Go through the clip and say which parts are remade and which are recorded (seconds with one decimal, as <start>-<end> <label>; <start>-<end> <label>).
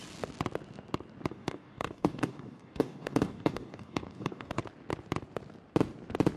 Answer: 0.0-1.3 recorded; 1.3-4.6 remade; 4.6-6.4 recorded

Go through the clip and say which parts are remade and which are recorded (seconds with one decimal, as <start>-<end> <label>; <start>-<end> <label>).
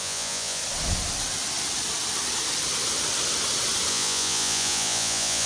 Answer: 0.0-0.6 remade; 0.6-3.9 recorded; 3.9-5.5 remade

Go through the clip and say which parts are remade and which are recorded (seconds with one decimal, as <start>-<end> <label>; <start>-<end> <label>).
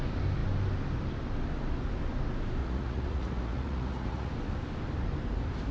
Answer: 0.0-2.6 recorded; 2.6-4.3 remade; 4.3-5.7 recorded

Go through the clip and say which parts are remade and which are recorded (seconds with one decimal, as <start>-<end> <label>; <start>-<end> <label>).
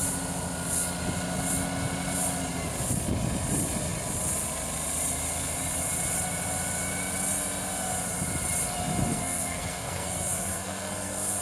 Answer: 0.0-9.1 recorded; 9.1-11.4 remade